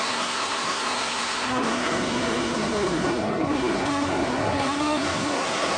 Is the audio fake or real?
fake